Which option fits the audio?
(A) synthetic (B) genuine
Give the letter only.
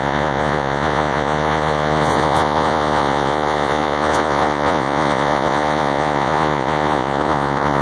A